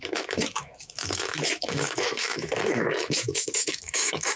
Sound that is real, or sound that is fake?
fake